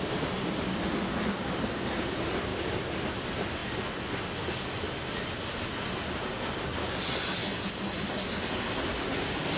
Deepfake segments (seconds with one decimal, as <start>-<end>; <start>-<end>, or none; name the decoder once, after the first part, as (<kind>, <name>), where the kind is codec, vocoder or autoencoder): 2.5-3.0 (vocoder, BigVGAN v2); 7.4-8.0

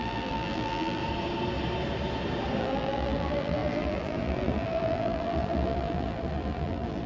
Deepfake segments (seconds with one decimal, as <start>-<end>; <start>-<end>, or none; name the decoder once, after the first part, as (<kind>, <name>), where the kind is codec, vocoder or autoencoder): 0.0-1.0 (vocoder, BigVGAN v2); 2.6-7.1

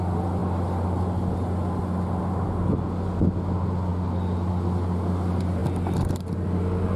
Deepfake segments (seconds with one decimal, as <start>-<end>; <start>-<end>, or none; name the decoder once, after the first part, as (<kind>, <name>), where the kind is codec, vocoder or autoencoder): none

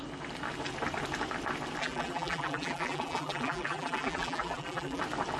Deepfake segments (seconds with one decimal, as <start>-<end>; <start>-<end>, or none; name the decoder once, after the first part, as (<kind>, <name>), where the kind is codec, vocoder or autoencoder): 1.8-5.0 (vocoder, BigVGAN v2)